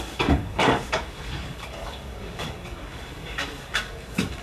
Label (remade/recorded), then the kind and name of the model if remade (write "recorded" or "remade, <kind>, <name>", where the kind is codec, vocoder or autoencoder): remade, codec, DAC